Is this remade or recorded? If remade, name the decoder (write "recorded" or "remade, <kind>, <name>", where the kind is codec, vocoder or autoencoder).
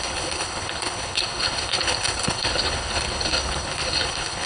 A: remade, codec, HILCodec